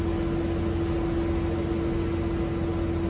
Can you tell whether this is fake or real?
real